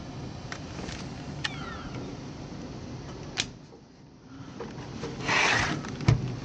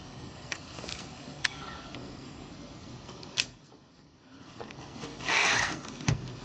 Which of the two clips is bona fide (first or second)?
first